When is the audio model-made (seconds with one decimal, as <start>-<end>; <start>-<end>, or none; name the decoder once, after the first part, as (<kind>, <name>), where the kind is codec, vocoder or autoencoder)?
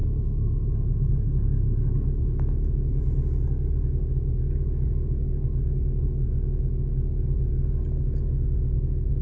none